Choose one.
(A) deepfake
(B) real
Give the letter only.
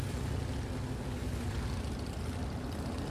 B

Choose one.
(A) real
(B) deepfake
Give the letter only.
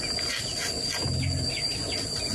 A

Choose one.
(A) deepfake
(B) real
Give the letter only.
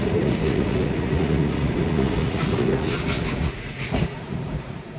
A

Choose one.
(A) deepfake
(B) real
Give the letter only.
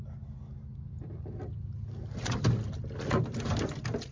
B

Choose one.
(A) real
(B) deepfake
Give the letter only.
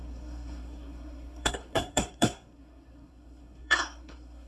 B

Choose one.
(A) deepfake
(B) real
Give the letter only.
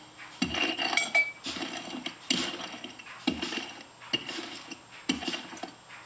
B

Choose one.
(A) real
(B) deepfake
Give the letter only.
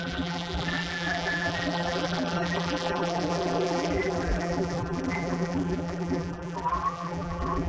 B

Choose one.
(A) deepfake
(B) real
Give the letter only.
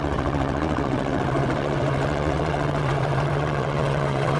A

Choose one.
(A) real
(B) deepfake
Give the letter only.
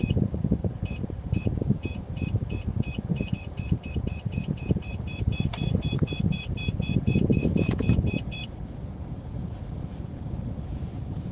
B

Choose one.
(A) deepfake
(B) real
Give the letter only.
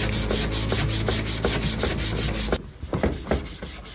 B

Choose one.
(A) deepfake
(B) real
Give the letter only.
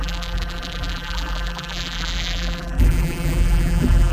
A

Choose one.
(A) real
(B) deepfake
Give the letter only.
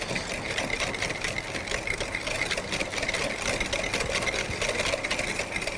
A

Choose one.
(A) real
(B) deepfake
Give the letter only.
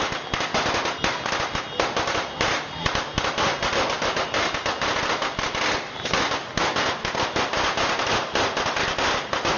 A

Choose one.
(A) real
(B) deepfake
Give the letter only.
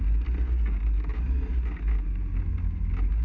A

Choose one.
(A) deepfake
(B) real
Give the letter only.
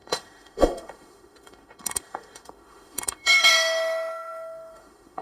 A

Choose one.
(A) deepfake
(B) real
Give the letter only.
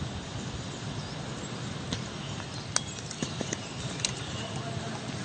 B